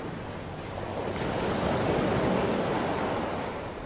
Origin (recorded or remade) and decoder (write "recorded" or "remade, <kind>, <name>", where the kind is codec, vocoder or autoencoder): recorded